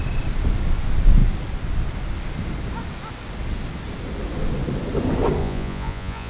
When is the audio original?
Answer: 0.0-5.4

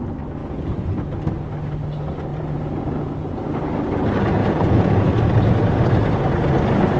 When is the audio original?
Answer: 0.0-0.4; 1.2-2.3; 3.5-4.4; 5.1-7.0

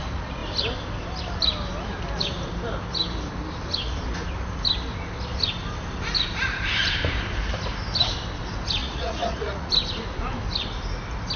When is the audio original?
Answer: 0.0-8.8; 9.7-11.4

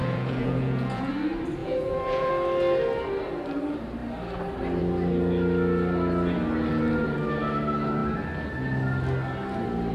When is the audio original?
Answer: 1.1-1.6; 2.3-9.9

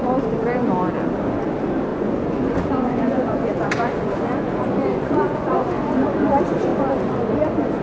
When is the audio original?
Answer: 0.0-1.9; 6.3-7.8

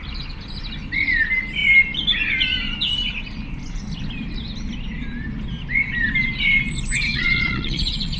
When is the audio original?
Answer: 0.0-7.1

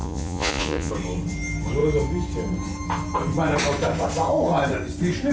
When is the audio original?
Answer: 0.9-5.3